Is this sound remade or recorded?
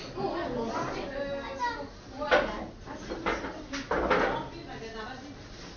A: recorded